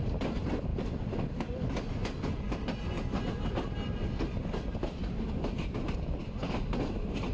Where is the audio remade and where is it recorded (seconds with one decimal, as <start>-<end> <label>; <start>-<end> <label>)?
0.0-7.3 recorded